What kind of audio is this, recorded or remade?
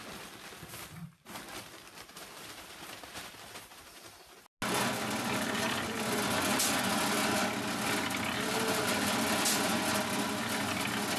recorded